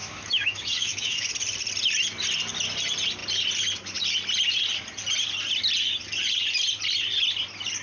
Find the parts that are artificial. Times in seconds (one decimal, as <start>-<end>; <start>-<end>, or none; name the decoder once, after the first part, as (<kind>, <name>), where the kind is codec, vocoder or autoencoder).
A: 0.0-1.3 (autoencoder, DAC-VAE)